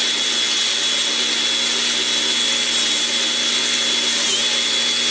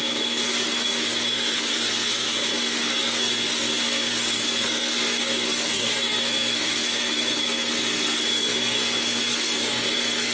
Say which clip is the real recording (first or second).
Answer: first